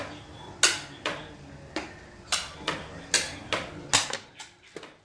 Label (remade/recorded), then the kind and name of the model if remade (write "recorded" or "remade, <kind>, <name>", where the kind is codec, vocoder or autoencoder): recorded